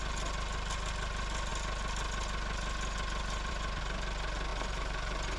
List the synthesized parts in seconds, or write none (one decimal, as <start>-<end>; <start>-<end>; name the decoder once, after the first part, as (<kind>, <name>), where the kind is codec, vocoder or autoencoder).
4.5-5.4 (vocoder, BigVGAN v2)